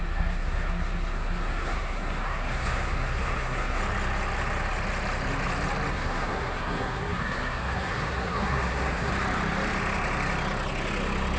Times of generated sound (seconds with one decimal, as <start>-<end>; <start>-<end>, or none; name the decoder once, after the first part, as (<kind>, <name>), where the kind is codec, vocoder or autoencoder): 0.0-3.8 (codec, SNAC); 5.9-9.1